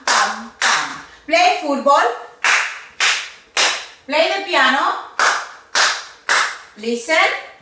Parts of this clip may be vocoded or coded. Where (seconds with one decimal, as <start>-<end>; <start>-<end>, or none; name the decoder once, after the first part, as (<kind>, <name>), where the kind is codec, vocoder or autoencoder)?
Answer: none